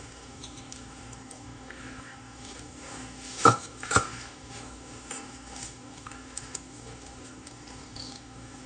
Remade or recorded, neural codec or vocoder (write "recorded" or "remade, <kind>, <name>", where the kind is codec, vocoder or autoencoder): remade, codec, DAC